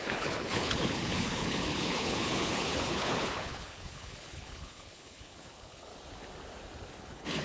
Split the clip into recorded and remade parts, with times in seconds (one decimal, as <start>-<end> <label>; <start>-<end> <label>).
0.0-5.9 remade; 5.9-7.0 recorded; 7.0-7.4 remade